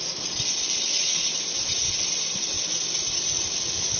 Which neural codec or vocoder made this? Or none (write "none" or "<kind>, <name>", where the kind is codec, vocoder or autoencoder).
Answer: none